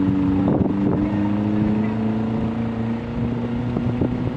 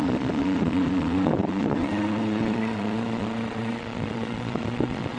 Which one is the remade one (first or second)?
second